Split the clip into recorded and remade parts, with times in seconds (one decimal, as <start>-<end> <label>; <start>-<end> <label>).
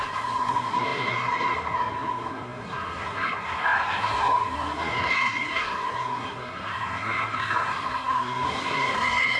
0.0-9.4 remade